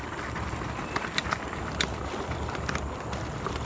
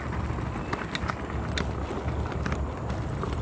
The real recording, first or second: second